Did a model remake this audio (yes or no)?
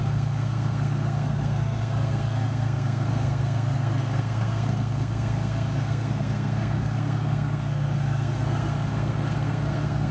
yes